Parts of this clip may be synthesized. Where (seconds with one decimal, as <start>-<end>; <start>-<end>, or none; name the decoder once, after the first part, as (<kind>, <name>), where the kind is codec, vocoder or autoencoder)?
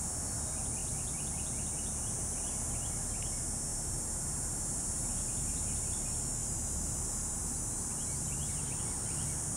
3.7-5.9 (vocoder, BigVGAN v2); 6.4-8.8